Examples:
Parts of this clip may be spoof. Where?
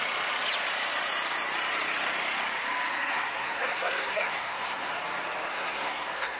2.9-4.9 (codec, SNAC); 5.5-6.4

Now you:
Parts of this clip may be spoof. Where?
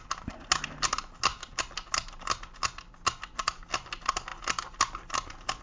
none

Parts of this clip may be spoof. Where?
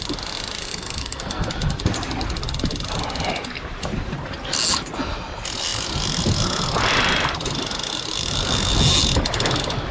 0.6-1.5 (codec, SNAC)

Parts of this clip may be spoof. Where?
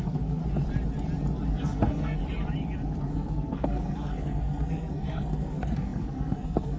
0.0-0.4 (codec, SNAC); 1.5-2.2; 3.1-6.8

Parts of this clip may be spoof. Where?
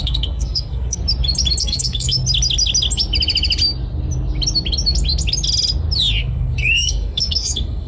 0.0-1.0 (codec, SNAC); 1.6-2.2; 6.2-7.9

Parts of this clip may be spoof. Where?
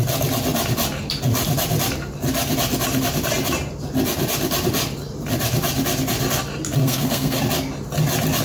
6.8-7.4 (codec, SNAC)